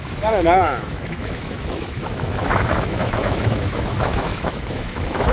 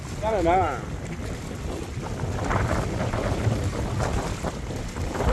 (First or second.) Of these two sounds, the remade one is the first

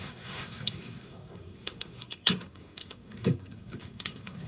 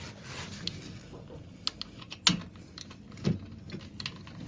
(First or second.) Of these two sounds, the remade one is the first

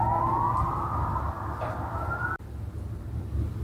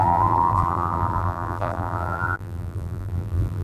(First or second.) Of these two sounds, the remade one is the second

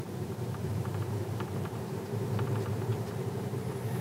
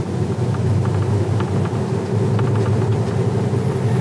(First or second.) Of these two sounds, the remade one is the first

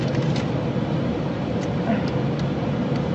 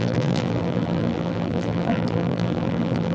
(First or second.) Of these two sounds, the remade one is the second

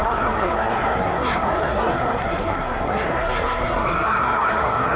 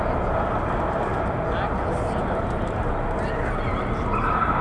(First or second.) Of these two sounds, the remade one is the first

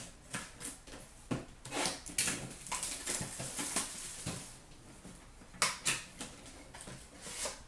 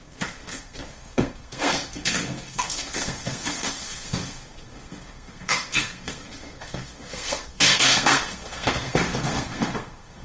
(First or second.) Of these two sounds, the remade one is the second